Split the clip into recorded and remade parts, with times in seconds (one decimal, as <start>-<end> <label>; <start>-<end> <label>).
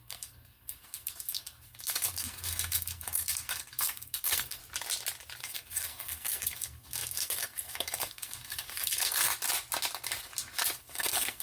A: 0.0-4.6 remade; 4.6-5.4 recorded; 5.4-9.3 remade; 9.3-10.8 recorded; 10.8-11.4 remade